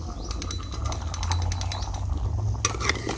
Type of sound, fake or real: real